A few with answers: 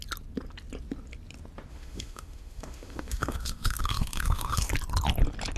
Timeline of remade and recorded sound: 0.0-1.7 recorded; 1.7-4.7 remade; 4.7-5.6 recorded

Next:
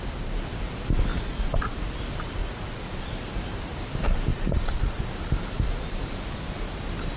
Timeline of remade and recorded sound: 0.0-1.1 recorded; 1.1-2.0 remade; 2.0-2.4 recorded; 2.4-3.0 remade; 3.0-4.3 recorded; 4.3-5.0 remade; 5.0-7.2 recorded

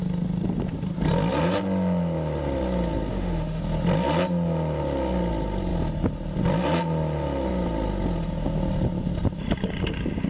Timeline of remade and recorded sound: 0.0-3.1 recorded; 3.1-3.6 remade; 3.6-10.3 recorded

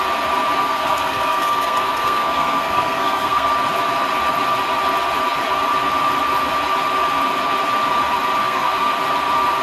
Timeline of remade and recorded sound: 0.0-0.6 recorded; 0.6-3.5 remade; 3.5-8.4 recorded; 8.4-8.9 remade; 8.9-9.6 recorded